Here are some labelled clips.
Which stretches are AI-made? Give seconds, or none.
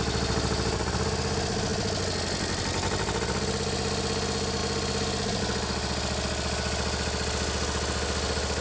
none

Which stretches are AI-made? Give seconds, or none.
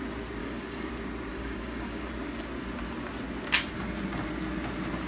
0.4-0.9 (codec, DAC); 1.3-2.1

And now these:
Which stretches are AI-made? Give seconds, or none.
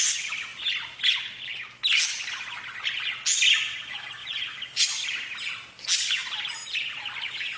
4.2-5.5 (vocoder, BigVGAN v2)